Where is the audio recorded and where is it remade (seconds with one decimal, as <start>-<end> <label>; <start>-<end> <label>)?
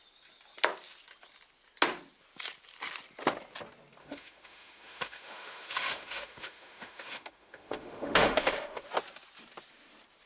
0.0-4.0 recorded; 4.0-8.9 remade; 8.9-10.3 recorded